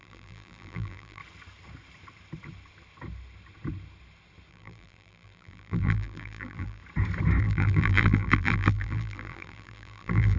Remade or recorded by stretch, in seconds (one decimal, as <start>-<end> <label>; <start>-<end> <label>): 0.0-1.2 remade; 1.2-4.5 recorded; 4.5-6.8 remade; 6.8-7.4 recorded; 7.4-10.4 remade